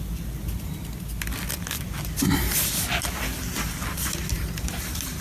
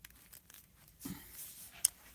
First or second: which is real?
first